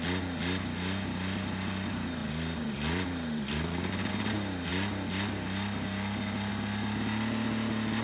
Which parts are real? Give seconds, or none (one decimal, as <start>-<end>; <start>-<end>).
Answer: 0.0-2.2; 4.1-8.0